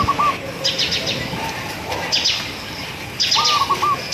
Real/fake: real